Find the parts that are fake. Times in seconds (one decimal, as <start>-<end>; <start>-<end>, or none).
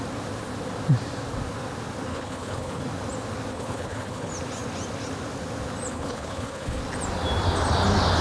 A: 2.1-2.8; 3.5-4.3; 5.9-6.8